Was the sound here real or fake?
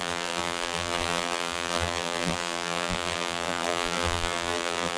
fake